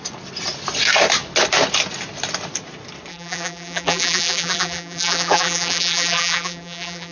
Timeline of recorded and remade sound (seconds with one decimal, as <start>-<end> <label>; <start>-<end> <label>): 0.0-3.1 recorded; 3.1-7.1 remade